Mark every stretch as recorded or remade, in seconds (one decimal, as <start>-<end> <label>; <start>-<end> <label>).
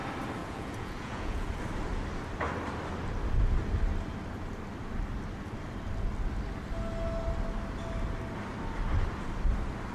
0.0-0.4 recorded; 0.4-1.6 remade; 1.6-9.9 recorded